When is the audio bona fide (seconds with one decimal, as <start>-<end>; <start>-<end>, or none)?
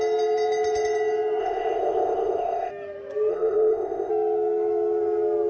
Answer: 0.0-1.4; 2.7-3.3; 4.1-5.5